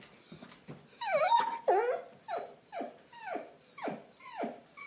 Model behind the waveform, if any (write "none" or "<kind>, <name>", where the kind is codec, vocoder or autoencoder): none